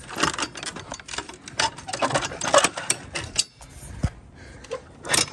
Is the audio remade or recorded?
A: recorded